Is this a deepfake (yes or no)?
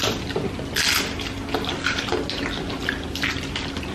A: no